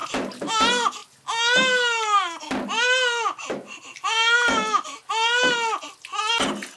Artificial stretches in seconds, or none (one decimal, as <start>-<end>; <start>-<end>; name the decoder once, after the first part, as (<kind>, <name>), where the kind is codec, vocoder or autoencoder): none